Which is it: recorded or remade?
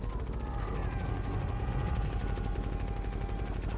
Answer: recorded